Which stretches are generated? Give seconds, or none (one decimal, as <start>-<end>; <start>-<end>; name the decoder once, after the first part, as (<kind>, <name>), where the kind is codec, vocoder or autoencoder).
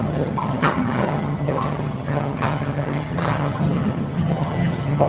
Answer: 0.0-5.1 (vocoder, HiFi-GAN)